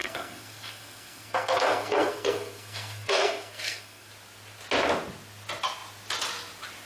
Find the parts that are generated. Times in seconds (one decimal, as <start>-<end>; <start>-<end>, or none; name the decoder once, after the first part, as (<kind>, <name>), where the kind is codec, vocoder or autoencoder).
0.0-4.1 (codec, SNAC)